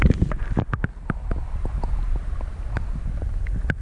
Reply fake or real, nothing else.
real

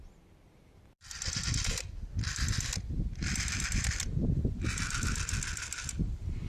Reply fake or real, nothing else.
fake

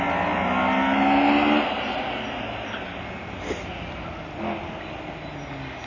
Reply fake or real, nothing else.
real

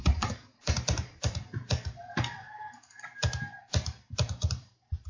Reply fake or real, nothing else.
fake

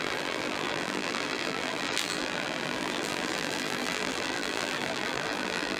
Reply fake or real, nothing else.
fake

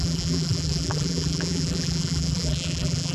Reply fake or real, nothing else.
fake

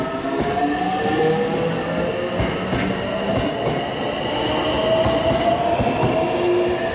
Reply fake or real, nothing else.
real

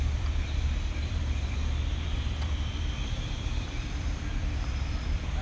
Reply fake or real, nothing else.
fake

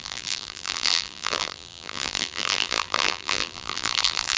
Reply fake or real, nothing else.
fake